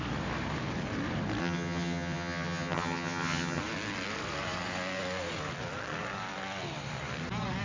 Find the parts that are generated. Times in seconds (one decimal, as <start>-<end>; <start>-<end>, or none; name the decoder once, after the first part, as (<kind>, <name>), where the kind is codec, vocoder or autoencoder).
1.4-3.6 (vocoder, HiFi-GAN)